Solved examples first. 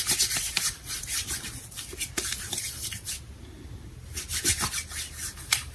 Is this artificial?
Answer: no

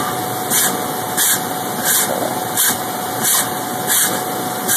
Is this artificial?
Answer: no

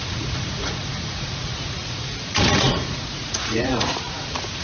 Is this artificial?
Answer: yes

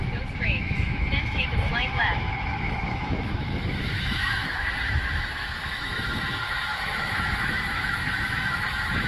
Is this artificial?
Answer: yes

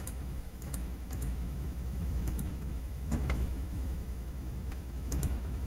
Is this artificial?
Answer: yes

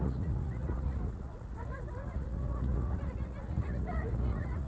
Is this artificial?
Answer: yes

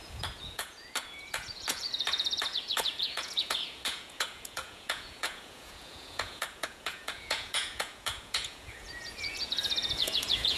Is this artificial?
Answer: yes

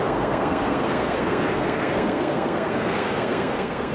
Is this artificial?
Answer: yes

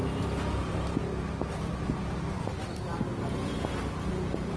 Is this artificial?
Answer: no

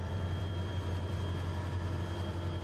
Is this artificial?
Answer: yes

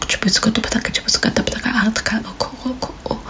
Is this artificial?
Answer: no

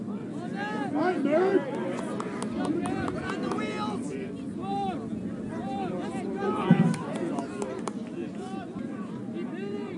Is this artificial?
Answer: no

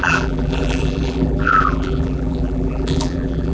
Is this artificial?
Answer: yes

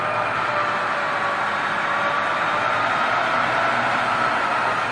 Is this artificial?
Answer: yes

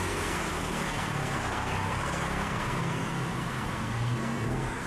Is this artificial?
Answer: yes